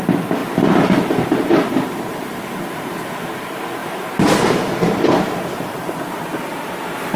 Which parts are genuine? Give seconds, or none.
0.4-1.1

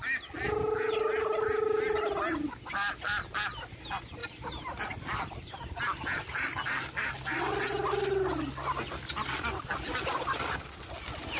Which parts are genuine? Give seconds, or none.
0.0-11.4

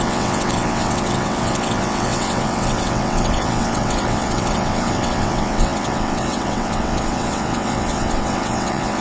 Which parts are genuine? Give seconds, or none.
none